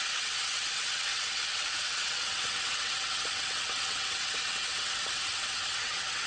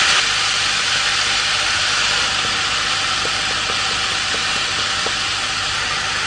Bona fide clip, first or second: second